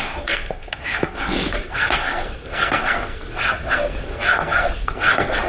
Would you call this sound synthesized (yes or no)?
yes